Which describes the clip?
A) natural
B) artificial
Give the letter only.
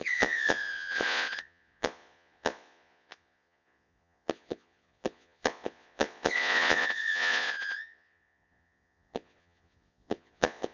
B